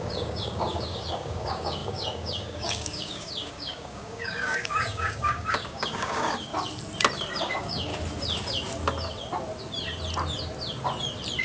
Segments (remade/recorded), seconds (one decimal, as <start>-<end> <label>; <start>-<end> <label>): 0.0-6.5 remade; 6.5-7.4 recorded; 7.4-7.9 remade; 7.9-11.4 recorded